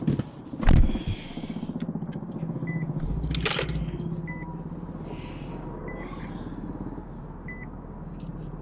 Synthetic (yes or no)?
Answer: no